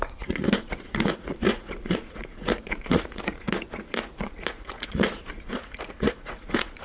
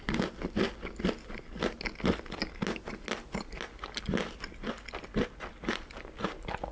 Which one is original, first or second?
second